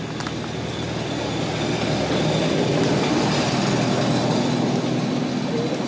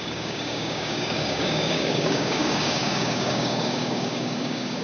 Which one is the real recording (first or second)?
first